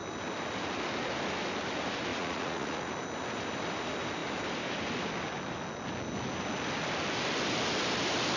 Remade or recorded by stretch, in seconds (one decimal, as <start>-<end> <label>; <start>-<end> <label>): 0.0-2.1 recorded; 2.1-2.9 remade; 2.9-8.4 recorded